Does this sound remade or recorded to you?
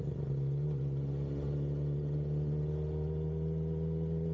recorded